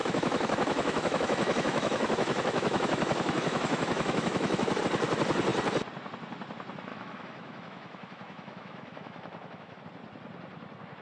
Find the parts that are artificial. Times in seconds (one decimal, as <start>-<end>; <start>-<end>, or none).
0.0-4.8; 6.9-9.8